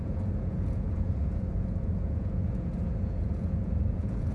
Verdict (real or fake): fake